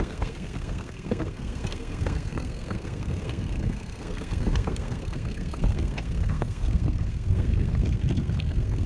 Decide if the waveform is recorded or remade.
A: remade